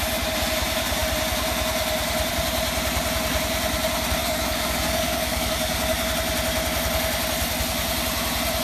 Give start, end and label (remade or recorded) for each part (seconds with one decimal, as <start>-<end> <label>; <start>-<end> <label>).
0.0-4.2 recorded; 4.2-6.1 remade; 6.1-8.6 recorded